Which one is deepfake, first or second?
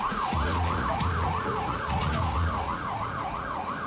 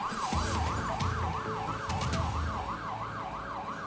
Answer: first